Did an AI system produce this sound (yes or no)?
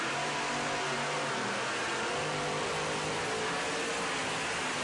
no